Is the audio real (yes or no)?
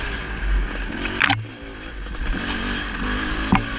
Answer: yes